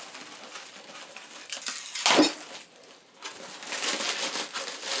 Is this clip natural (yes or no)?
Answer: yes